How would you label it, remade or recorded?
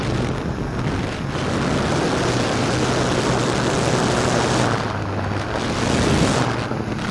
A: recorded